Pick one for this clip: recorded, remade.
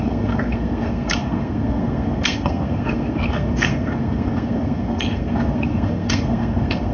remade